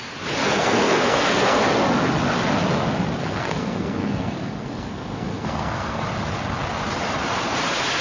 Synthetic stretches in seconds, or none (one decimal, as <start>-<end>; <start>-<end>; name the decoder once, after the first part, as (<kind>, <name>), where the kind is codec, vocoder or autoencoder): 0.4-1.6 (codec, SNAC); 3.2-6.0